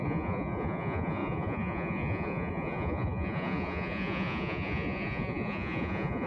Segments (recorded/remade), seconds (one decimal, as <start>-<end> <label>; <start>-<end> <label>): 0.0-6.3 remade